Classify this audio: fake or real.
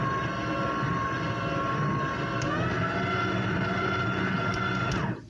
real